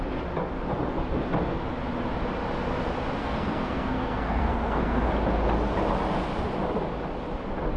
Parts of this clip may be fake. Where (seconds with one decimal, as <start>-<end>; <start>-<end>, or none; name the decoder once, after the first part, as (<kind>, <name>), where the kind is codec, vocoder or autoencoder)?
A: 3.2-5.1 (codec, SNAC)